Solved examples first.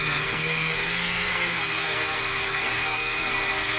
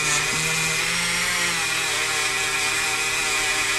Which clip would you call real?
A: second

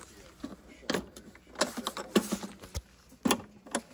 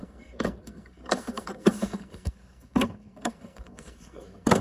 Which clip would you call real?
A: first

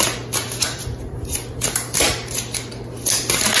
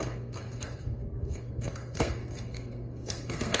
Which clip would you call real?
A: first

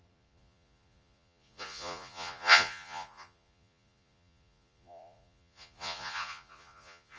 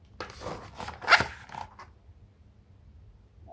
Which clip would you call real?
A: second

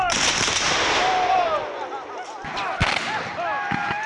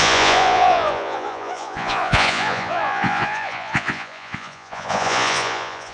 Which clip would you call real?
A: first